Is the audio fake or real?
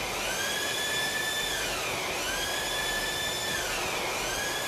real